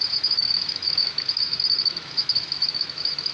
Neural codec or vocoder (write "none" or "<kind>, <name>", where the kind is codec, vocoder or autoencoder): autoencoder, DAC-VAE